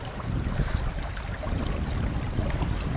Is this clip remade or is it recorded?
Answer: recorded